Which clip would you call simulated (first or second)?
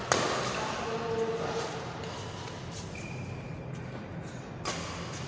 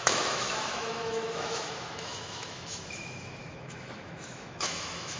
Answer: second